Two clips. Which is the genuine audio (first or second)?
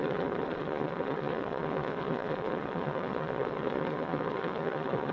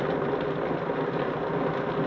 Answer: second